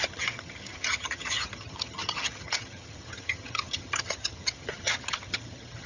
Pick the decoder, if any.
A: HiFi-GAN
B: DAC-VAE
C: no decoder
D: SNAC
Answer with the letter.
A